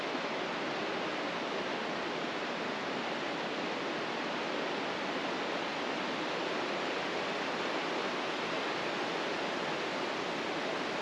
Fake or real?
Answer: real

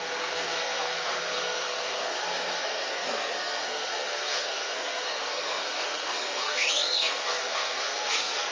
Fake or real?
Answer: fake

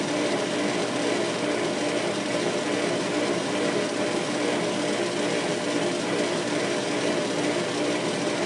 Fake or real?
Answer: real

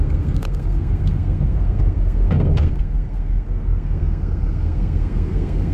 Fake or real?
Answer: fake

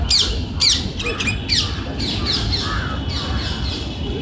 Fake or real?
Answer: real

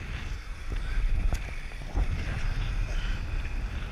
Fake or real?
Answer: real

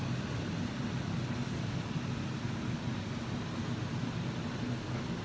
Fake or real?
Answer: real